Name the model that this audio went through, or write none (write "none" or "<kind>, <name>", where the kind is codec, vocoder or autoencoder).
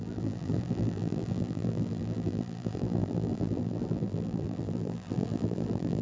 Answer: vocoder, BigVGAN v2